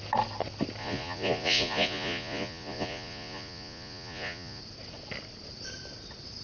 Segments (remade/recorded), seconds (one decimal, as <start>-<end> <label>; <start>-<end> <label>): 0.0-0.8 recorded; 0.8-4.6 remade; 4.6-6.4 recorded